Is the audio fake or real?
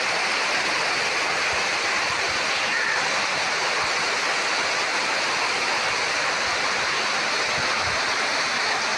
real